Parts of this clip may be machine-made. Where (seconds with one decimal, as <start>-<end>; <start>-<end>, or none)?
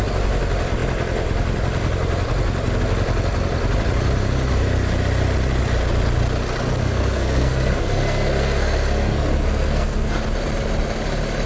6.8-10.2